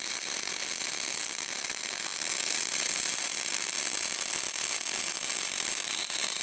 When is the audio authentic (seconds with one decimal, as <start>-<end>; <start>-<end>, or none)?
0.0-6.4